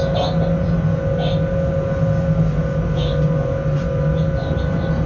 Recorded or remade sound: recorded